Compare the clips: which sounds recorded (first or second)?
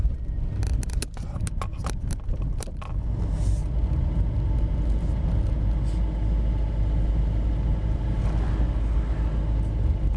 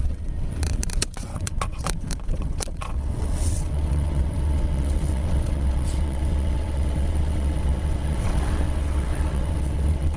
first